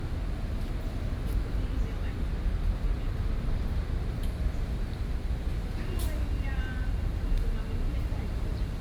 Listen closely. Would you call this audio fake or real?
real